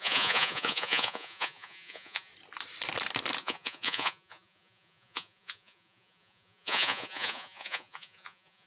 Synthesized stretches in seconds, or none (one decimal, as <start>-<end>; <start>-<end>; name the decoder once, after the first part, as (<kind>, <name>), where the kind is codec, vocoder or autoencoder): 0.0-2.3 (vocoder, Vocos); 3.4-8.7